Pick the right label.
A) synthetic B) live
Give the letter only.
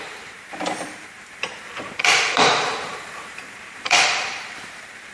A